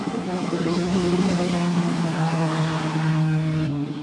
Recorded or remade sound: remade